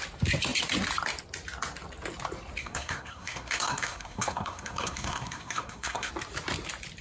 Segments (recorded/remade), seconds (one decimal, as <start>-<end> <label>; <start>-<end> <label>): 0.0-2.6 recorded; 2.6-6.1 remade; 6.1-7.0 recorded